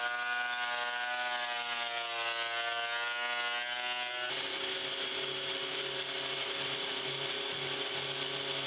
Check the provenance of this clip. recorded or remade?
recorded